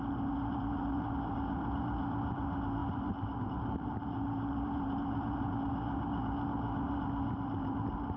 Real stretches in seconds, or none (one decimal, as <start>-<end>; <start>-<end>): none